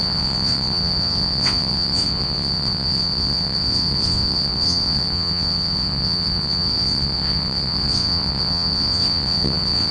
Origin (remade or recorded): remade